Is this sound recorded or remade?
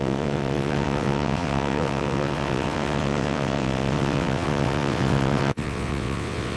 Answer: remade